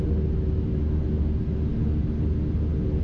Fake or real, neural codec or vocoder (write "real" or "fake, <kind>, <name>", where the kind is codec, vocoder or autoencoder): real